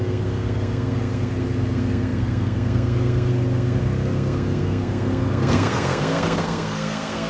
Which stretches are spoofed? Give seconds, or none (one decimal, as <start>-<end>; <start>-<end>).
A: 0.0-7.3